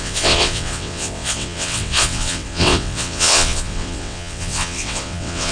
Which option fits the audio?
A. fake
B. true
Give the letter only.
A